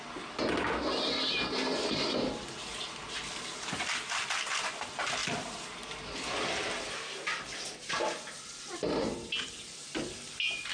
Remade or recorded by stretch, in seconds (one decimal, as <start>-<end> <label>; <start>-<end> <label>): 0.0-1.7 recorded; 1.7-2.5 remade; 2.5-10.7 recorded